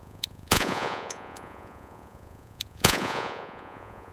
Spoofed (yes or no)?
yes